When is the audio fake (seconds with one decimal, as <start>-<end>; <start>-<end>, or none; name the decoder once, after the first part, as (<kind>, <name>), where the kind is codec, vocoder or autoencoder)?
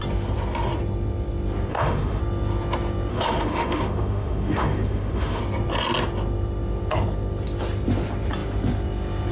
1.7-2.2 (autoencoder, DAC-VAE); 3.1-5.4